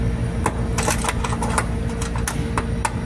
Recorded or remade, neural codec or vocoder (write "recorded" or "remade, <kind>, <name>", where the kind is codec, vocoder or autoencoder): recorded